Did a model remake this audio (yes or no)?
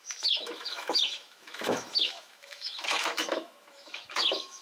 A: yes